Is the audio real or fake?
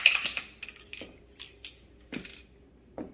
real